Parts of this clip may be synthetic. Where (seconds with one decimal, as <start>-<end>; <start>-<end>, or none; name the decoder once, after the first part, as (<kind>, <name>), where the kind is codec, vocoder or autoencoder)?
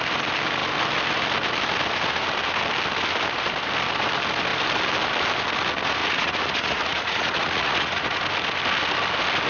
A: 6.0-8.2 (vocoder, Vocos)